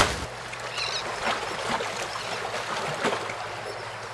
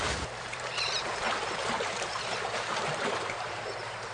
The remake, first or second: second